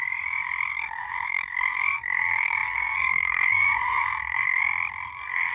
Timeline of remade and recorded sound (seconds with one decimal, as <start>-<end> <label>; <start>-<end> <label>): 0.0-0.7 recorded; 0.7-4.6 remade; 4.6-5.1 recorded; 5.1-5.5 remade